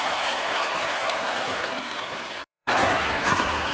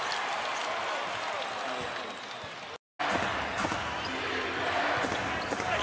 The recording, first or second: second